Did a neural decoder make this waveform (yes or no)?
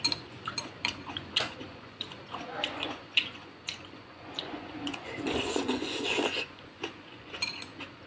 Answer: yes